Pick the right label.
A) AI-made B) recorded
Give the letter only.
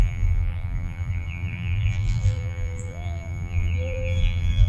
A